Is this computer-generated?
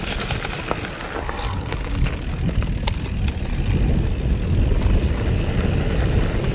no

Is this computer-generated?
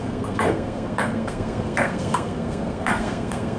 yes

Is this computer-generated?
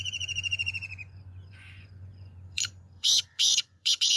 yes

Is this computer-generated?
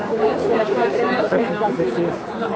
yes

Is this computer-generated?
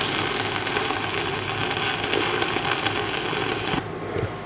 no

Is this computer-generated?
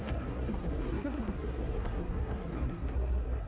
yes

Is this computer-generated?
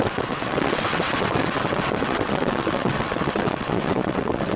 yes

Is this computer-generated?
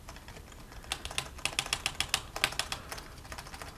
no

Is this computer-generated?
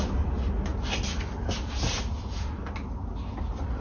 no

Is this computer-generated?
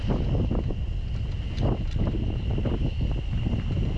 no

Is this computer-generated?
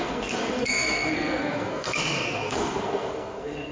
yes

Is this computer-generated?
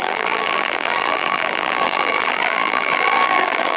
yes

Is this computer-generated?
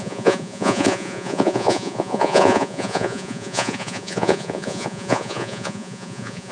yes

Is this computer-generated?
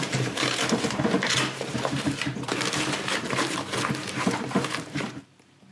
yes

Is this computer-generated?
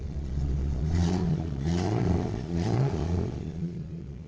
yes